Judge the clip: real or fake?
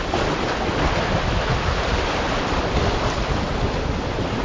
real